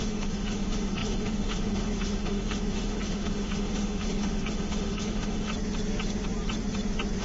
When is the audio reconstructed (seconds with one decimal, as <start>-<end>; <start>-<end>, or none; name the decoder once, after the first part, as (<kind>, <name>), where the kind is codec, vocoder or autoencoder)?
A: 0.0-5.5 (autoencoder, DAC-VAE)